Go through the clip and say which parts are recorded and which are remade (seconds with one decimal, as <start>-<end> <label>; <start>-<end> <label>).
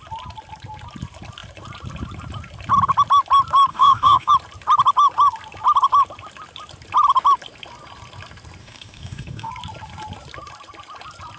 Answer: 0.0-3.7 recorded; 3.7-4.3 remade; 4.3-8.6 recorded; 8.6-9.5 remade; 9.5-11.4 recorded